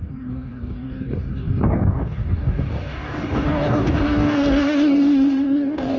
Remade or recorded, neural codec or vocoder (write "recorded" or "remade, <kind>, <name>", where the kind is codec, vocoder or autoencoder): remade, codec, DAC